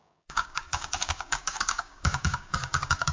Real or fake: fake